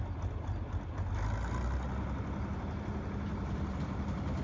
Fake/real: real